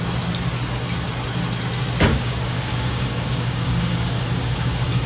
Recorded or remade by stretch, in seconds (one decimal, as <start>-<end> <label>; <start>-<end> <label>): 0.0-2.1 recorded; 2.1-5.1 remade